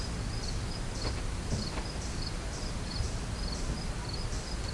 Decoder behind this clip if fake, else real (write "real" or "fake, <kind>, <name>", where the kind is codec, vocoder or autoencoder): real